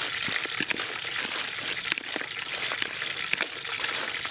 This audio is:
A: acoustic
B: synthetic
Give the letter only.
A